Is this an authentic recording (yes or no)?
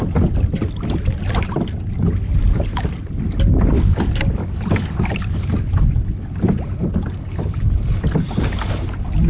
yes